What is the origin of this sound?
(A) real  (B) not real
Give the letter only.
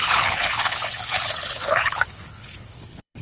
B